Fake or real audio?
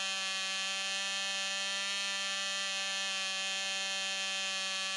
real